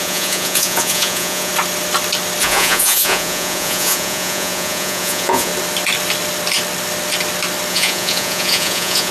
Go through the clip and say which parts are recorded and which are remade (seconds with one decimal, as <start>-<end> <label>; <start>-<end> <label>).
0.0-1.5 remade; 1.5-2.4 recorded; 2.4-5.5 remade; 5.5-7.7 recorded; 7.7-9.1 remade